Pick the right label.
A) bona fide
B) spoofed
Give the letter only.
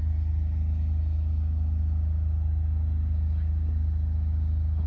A